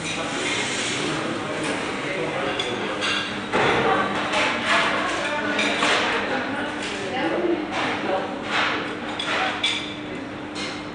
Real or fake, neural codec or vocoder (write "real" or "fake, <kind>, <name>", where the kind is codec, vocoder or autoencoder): real